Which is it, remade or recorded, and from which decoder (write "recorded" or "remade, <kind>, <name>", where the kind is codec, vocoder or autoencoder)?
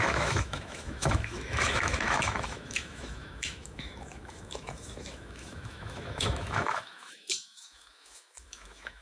remade, autoencoder, DAC-VAE